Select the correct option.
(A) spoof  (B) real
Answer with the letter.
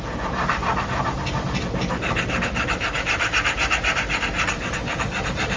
A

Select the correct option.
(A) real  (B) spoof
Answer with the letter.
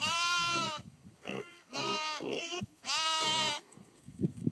B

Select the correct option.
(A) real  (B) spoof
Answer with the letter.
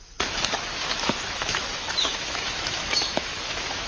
B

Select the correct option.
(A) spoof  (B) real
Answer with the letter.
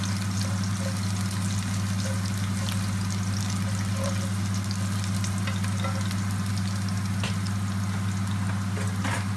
B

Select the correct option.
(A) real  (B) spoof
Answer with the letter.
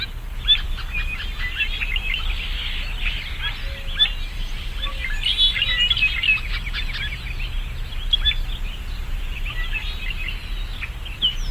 A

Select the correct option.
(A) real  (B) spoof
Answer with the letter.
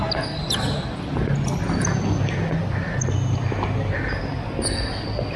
A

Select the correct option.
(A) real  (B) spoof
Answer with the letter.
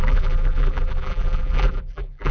B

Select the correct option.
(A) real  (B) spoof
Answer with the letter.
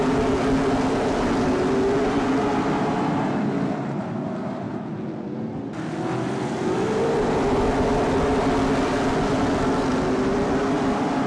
A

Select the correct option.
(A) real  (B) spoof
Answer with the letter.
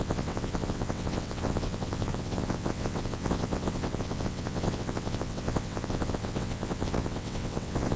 B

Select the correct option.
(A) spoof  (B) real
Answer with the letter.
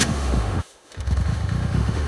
A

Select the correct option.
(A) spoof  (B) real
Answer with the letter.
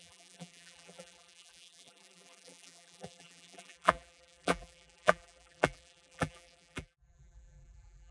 A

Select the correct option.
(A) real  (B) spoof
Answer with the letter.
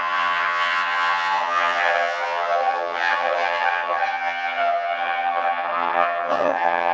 B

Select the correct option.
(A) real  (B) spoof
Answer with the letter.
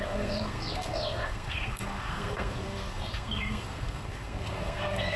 B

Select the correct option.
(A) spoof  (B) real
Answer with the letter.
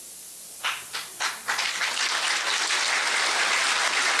B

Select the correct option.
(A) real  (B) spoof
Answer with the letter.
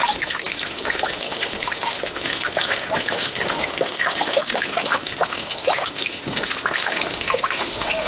B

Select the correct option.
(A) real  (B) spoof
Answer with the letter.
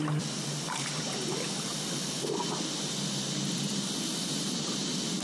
A